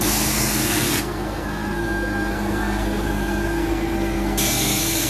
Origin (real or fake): fake